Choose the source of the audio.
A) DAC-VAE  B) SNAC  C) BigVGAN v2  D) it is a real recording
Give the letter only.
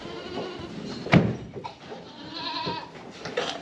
D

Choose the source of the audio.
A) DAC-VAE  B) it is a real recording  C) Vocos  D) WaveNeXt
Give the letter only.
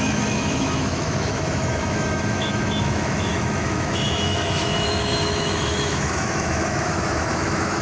A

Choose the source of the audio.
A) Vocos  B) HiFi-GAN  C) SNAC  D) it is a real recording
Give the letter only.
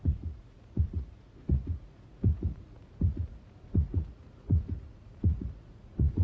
A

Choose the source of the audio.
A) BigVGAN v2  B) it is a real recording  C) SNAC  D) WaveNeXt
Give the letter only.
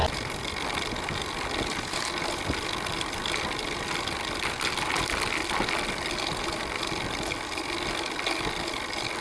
B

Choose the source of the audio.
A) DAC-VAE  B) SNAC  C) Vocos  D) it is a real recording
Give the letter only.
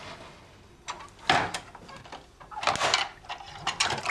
D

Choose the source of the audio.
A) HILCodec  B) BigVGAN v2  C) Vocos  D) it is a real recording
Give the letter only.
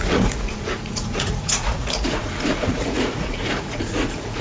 C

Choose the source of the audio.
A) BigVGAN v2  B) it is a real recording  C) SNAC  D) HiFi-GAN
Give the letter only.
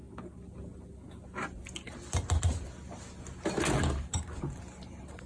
B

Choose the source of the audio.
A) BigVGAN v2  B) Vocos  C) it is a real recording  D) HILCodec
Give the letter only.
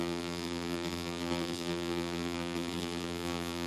A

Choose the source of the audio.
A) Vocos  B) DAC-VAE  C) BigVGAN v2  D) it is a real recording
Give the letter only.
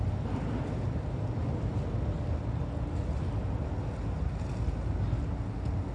D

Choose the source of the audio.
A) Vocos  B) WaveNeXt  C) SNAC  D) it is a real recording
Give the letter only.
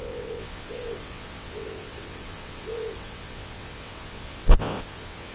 B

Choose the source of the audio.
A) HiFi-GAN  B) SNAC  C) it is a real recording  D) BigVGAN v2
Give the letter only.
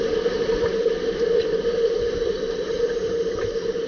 C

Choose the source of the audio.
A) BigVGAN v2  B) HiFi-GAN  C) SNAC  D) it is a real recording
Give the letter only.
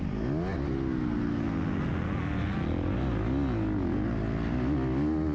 D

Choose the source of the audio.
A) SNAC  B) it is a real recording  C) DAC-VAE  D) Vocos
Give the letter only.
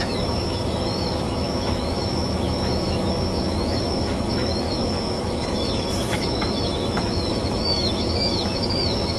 C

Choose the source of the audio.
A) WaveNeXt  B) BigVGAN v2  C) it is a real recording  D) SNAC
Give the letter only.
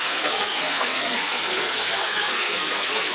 D